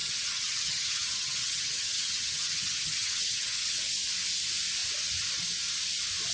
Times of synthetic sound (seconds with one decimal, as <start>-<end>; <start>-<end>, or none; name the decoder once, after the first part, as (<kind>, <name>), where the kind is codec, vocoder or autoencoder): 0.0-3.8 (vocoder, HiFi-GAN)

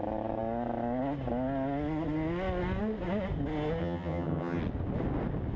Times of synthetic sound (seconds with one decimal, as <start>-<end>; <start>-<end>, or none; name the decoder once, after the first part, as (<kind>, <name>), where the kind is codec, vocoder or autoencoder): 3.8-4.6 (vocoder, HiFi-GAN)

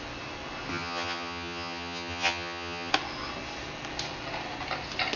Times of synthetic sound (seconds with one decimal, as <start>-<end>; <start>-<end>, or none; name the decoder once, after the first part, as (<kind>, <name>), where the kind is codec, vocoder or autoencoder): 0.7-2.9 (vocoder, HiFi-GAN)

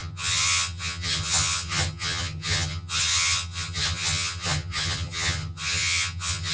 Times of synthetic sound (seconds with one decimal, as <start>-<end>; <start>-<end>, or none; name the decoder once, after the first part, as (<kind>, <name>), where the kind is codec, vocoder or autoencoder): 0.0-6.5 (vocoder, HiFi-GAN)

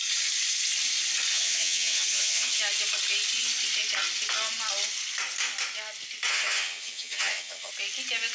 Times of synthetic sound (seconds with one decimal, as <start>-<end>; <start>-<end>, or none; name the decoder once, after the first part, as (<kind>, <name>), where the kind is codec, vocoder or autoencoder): 1.3-2.6 (vocoder, HiFi-GAN); 6.3-7.7

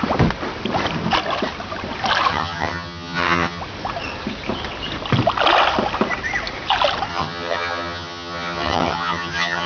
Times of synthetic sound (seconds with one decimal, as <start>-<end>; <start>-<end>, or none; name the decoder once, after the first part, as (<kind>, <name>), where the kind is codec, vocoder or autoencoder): 2.3-3.6 (vocoder, HiFi-GAN); 7.1-9.7

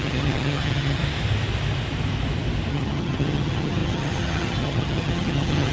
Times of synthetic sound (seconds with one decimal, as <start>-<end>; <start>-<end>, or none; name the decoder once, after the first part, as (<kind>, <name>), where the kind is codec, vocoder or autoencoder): 0.0-1.0 (vocoder, HiFi-GAN); 2.7-5.7